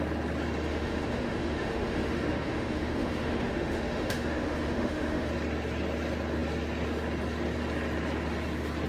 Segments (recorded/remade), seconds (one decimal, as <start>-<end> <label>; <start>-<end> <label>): 0.0-0.7 recorded; 0.7-5.3 remade; 5.3-8.9 recorded